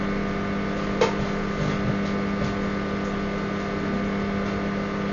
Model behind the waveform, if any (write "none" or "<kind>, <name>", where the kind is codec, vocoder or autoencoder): none